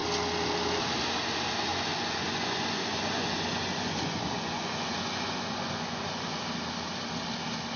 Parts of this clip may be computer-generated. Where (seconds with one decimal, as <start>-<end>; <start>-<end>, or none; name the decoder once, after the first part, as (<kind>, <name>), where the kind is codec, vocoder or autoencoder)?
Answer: 1.7-6.4 (vocoder, Vocos)